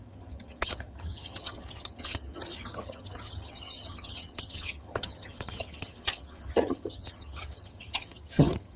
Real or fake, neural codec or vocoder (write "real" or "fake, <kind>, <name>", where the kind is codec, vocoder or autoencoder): fake, vocoder, HiFi-GAN